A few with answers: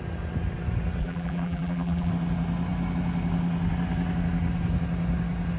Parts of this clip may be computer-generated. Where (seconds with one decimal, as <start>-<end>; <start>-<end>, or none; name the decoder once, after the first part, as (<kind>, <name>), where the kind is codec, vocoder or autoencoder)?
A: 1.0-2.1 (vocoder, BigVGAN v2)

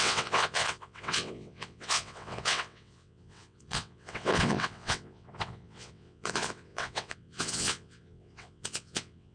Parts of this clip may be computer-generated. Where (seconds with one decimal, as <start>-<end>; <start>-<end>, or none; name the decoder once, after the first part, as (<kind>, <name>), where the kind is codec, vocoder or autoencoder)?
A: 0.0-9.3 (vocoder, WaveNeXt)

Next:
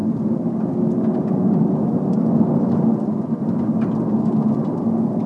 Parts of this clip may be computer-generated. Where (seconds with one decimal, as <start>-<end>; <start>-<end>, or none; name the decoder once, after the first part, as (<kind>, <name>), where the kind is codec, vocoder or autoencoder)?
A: none

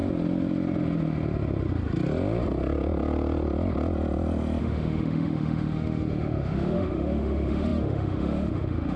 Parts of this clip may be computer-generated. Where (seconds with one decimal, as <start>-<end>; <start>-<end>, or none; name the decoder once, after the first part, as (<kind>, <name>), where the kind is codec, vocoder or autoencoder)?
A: 4.6-9.0 (autoencoder, DAC-VAE)

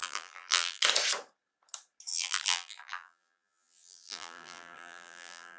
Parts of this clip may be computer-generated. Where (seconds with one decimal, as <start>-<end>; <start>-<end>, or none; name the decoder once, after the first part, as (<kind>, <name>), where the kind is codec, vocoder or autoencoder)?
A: 0.0-0.8 (vocoder, BigVGAN v2); 2.1-5.6

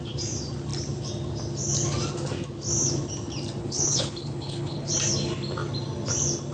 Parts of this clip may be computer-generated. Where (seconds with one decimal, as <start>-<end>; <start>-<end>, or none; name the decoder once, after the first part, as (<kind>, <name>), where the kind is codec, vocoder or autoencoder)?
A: 3.6-4.9 (codec, HILCodec)

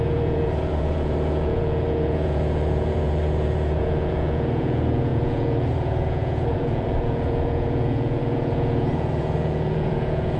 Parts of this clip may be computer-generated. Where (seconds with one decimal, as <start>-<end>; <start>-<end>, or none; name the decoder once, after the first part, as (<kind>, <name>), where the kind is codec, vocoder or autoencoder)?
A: 0.0-10.4 (vocoder, Vocos)

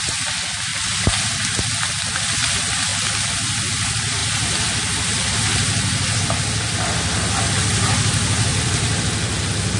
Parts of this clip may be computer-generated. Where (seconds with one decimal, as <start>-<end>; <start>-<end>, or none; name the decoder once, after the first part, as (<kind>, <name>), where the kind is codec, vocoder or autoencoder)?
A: 8.5-9.0 (vocoder, BigVGAN v2)